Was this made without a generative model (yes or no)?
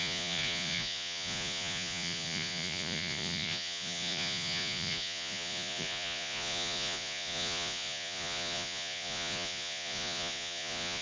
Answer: no